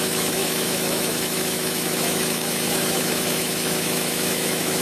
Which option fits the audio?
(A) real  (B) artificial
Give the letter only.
B